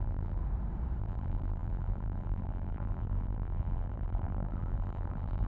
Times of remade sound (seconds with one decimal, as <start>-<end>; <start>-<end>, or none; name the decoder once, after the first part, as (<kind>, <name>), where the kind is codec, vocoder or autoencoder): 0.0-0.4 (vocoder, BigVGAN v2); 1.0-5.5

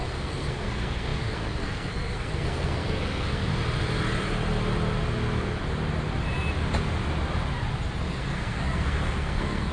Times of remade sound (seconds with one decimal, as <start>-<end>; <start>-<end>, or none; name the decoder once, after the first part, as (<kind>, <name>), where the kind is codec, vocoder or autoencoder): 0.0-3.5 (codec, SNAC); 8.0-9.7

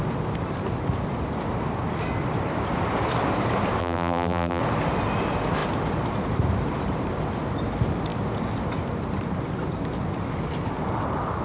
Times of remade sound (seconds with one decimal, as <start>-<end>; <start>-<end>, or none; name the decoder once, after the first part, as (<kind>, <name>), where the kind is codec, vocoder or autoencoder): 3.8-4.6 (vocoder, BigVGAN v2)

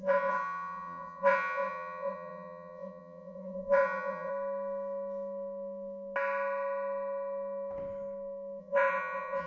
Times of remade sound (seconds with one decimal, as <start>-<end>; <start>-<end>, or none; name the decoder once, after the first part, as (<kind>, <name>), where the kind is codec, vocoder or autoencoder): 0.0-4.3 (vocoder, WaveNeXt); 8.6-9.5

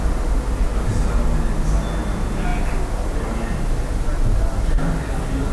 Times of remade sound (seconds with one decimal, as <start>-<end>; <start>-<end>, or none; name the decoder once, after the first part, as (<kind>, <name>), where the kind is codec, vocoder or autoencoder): none